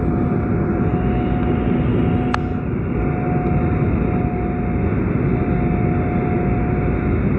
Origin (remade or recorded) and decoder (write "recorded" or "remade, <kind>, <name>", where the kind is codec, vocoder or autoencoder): recorded